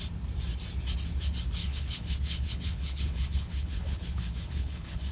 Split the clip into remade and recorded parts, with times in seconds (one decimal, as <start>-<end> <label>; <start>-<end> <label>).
0.0-1.6 recorded; 1.6-5.1 remade